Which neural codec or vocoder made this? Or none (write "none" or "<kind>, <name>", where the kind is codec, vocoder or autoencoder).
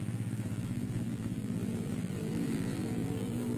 vocoder, BigVGAN v2